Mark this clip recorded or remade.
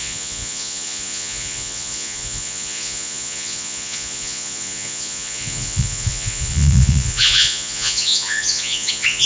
remade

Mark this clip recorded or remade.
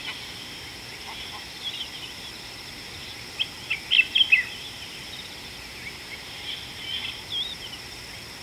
recorded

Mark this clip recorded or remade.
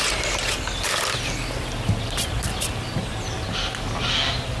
recorded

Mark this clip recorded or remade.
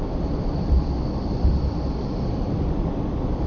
recorded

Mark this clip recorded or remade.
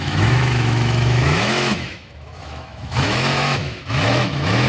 remade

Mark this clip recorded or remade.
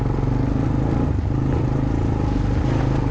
recorded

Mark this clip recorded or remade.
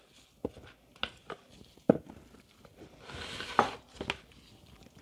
recorded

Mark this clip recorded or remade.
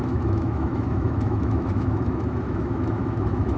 remade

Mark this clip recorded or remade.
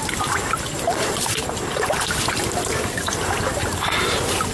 recorded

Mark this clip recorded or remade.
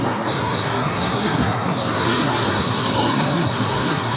remade